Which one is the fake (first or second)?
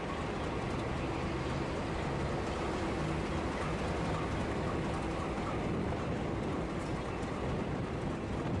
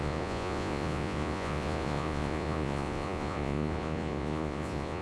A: second